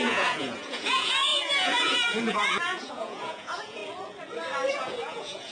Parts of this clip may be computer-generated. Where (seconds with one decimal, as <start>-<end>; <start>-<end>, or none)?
0.0-3.8; 4.7-5.5

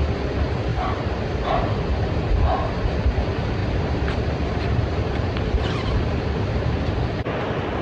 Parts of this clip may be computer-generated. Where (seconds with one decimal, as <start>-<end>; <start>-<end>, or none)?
0.7-1.4; 3.6-6.9